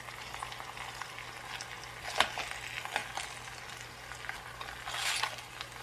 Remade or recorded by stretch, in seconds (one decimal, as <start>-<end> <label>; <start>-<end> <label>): 0.0-5.8 recorded